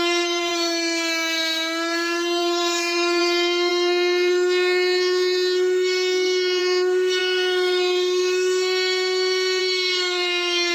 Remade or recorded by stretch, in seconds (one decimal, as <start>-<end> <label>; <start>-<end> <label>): 0.0-10.7 remade